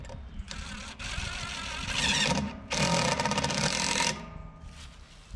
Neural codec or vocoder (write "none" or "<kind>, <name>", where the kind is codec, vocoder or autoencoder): none